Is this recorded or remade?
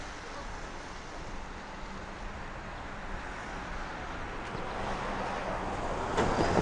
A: recorded